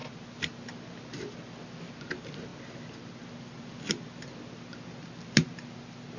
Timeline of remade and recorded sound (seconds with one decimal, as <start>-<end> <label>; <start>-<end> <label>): 0.0-6.2 recorded